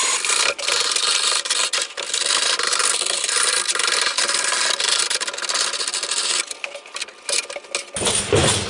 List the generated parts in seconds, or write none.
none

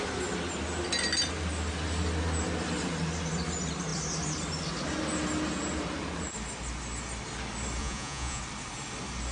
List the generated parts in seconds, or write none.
7.8-8.4 (vocoder, Vocos)